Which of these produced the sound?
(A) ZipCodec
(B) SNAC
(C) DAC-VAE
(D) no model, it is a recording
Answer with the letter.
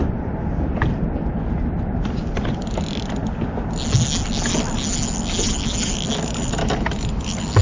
D